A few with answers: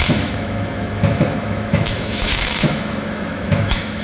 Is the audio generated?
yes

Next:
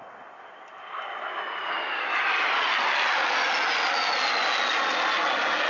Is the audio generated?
no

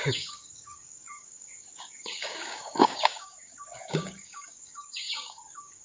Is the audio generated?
yes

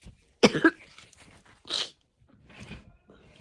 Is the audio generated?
no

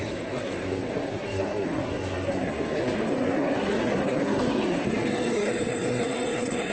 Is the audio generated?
yes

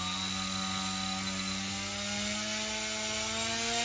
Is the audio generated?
no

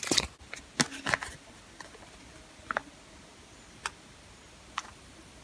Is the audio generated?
no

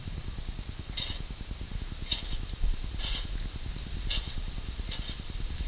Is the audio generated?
no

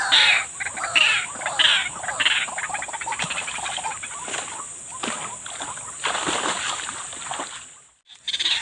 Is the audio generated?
no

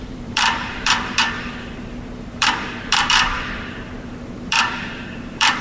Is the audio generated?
yes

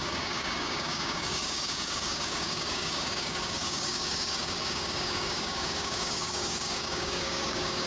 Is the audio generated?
yes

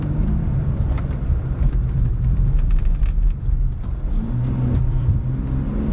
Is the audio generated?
yes